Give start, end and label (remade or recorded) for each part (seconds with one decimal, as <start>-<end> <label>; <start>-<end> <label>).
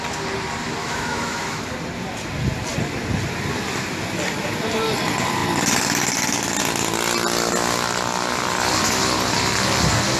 0.0-0.8 recorded; 0.8-1.6 remade; 1.6-10.2 recorded